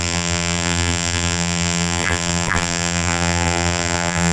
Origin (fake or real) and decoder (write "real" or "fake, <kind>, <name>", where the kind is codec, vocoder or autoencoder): fake, vocoder, BigVGAN v2